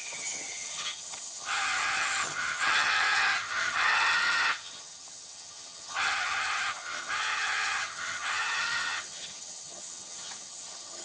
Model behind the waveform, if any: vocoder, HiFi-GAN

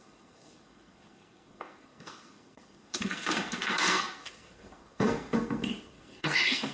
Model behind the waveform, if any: codec, SNAC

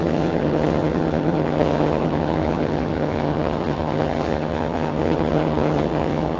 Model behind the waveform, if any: vocoder, HiFi-GAN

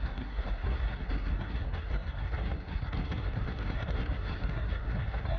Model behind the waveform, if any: codec, SNAC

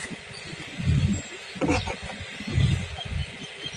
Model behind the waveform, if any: vocoder, Vocos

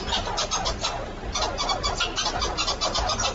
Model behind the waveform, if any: none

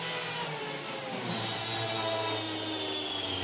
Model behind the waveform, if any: none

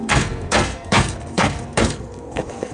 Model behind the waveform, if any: codec, SNAC